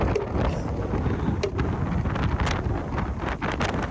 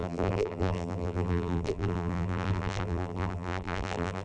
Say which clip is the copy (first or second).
second